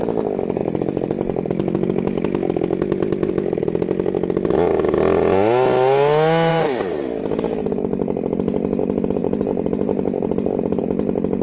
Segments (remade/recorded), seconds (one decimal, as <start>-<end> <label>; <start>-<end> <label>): 0.0-6.5 recorded; 6.5-7.2 remade; 7.2-9.2 recorded; 9.2-10.8 remade; 10.8-11.4 recorded